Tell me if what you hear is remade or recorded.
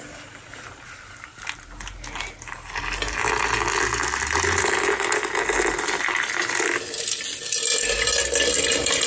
recorded